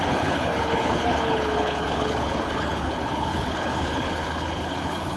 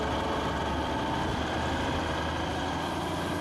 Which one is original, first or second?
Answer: second